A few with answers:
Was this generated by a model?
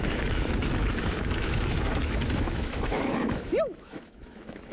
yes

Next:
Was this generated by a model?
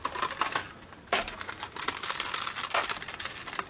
no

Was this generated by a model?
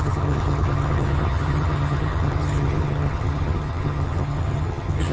yes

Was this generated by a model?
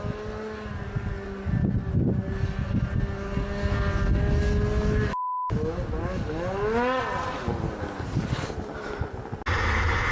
no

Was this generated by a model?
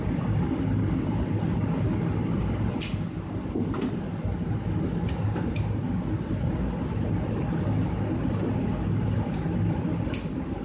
no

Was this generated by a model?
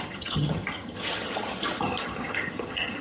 yes